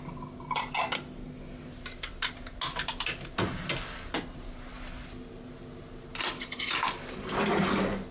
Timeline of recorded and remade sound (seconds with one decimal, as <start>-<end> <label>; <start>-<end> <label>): 0.0-8.1 recorded